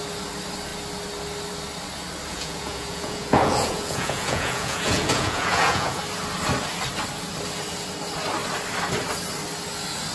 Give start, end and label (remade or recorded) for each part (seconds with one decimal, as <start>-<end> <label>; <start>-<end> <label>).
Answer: 0.0-2.3 recorded; 2.3-6.0 remade; 6.0-10.1 recorded